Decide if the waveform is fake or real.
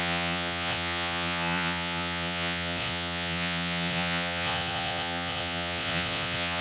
fake